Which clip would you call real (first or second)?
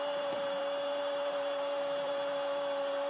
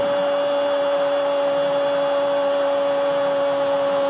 second